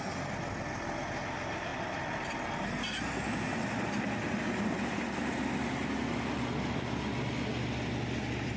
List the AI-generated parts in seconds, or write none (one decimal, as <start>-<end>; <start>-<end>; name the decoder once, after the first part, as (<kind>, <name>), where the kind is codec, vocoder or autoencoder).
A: none

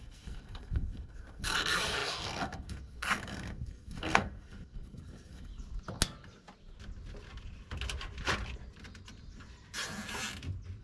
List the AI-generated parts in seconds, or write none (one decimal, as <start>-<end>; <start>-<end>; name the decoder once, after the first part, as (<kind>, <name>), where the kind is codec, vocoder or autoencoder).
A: 0.0-5.5 (codec, SNAC)

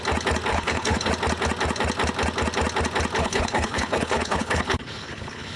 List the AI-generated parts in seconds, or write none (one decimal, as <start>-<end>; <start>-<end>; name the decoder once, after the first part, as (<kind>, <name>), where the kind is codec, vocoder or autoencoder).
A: 0.5-1.1 (codec, HILCodec); 3.2-5.6

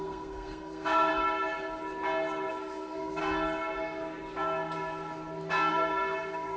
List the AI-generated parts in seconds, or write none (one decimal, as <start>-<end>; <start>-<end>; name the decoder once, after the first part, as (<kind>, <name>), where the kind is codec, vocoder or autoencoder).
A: 0.0-1.1 (codec, SNAC); 2.5-3.2; 5.7-6.6